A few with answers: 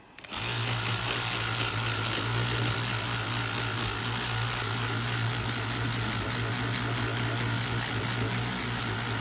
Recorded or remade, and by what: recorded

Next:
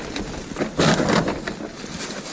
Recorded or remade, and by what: recorded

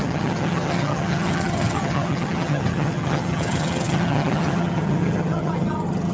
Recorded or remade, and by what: remade, vocoder, HiFi-GAN